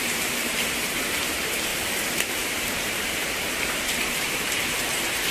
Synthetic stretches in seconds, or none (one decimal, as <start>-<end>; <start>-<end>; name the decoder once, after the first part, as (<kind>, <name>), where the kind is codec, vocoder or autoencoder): 0.0-5.3 (vocoder, BigVGAN v2)